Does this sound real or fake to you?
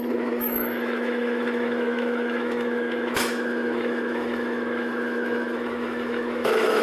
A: fake